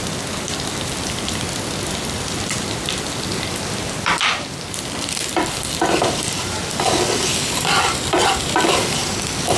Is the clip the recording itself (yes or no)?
no